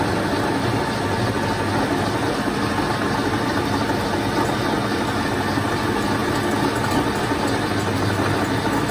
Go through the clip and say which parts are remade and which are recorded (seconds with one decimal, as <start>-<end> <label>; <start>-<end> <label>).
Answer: 0.0-8.9 recorded